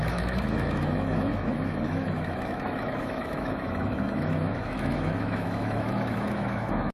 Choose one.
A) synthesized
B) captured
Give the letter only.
A